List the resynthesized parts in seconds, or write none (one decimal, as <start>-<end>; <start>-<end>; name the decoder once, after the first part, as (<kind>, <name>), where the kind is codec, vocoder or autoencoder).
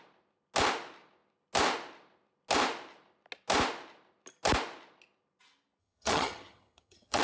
5.8-7.2 (vocoder, HiFi-GAN)